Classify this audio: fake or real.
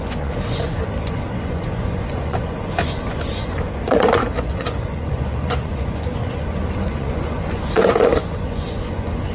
fake